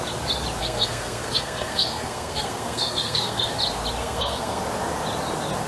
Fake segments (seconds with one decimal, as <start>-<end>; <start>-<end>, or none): 0.6-3.5; 4.0-4.6